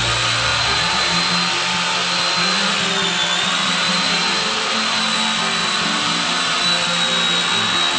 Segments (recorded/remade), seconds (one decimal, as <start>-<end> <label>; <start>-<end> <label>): 0.0-0.5 recorded; 0.5-1.3 remade; 1.3-3.6 recorded; 3.6-5.1 remade; 5.1-5.6 recorded; 5.6-6.6 remade; 6.6-8.0 recorded